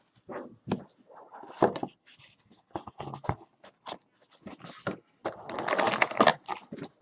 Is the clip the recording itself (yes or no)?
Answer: yes